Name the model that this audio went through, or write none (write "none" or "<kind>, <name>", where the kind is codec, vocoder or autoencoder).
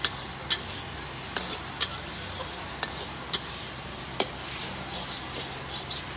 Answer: none